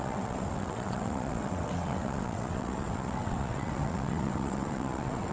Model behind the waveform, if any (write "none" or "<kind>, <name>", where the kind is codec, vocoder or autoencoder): vocoder, WaveNeXt